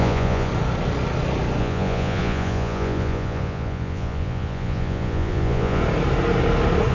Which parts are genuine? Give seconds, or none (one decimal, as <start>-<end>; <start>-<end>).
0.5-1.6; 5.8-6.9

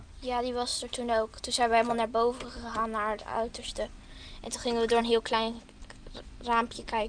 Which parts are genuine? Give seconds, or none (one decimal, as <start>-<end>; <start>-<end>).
0.0-7.1

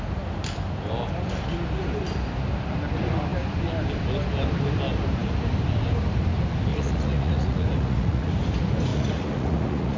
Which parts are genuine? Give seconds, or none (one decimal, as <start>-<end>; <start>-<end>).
0.0-6.7; 8.3-8.9

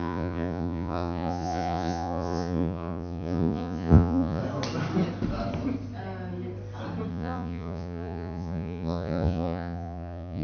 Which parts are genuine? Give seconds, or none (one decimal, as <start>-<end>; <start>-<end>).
4.4-7.1

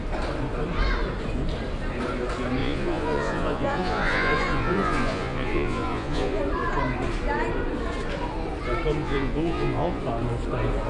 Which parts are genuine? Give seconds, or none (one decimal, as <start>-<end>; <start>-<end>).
0.0-2.6; 6.4-9.0; 10.0-10.9

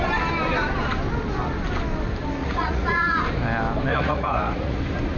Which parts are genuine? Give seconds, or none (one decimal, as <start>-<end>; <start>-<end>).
0.0-2.4; 3.2-3.9; 4.8-5.2